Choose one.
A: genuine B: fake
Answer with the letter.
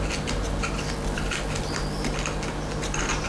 A